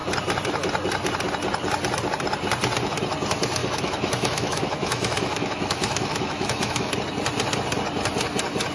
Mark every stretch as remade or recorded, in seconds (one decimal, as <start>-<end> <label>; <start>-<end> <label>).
0.0-3.6 recorded; 3.6-6.9 remade; 6.9-8.7 recorded